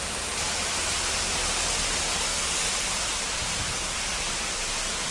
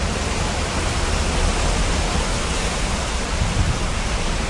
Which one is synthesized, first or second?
second